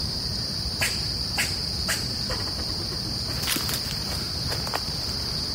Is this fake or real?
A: fake